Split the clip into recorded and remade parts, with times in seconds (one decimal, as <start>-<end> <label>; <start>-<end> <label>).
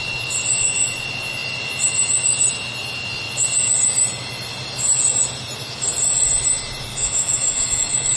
0.0-6.9 recorded; 6.9-8.2 remade